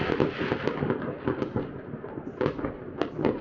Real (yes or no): yes